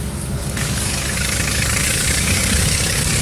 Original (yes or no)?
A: no